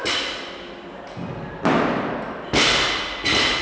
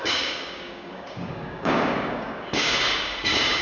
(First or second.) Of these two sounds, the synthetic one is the second